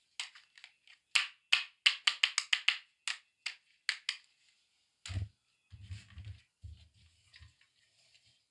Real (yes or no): yes